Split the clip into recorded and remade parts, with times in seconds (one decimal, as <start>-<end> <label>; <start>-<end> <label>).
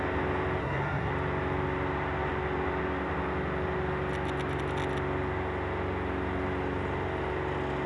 0.0-0.6 recorded; 0.6-1.1 remade; 1.1-7.9 recorded